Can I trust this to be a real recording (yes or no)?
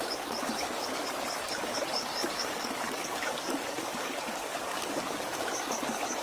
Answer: no